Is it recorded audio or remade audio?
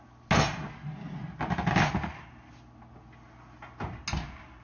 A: recorded